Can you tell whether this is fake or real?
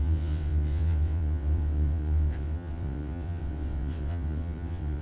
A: fake